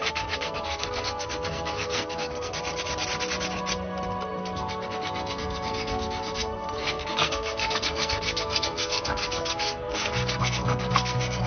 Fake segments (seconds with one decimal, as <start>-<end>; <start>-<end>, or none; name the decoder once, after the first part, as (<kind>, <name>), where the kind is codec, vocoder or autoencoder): 0.0-2.5 (codec, SNAC); 4.4-11.5